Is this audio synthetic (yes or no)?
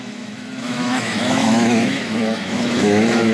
yes